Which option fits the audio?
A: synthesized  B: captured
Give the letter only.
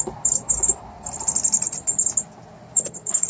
B